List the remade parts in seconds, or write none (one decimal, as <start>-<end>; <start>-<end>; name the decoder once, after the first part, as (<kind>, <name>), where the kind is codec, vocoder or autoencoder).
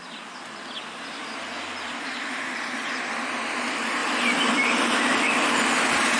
none